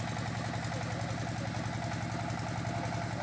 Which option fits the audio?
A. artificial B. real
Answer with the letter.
B